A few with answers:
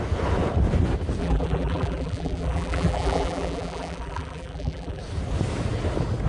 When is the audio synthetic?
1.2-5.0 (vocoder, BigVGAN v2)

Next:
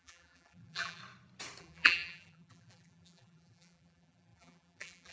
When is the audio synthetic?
0.0-1.0 (vocoder, BigVGAN v2); 1.6-5.1

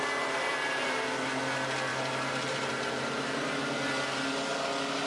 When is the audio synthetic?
1.9-3.5 (vocoder, BigVGAN v2)

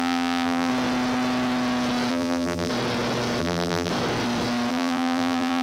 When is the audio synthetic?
0.0-0.7 (vocoder, BigVGAN v2); 2.1-2.7; 3.4-3.9; 4.7-5.6

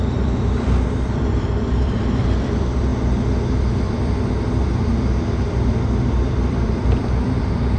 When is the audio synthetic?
0.0-2.9 (vocoder, BigVGAN v2); 3.6-7.8

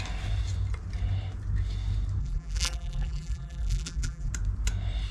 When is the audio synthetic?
2.2-4.3 (vocoder, BigVGAN v2)